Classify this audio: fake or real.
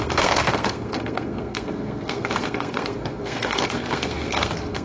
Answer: fake